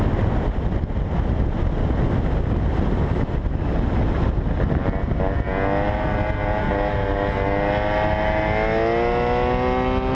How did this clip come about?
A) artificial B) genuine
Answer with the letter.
B